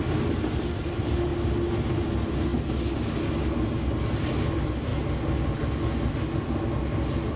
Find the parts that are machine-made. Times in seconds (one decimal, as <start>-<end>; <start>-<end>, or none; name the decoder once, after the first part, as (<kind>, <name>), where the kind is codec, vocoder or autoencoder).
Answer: none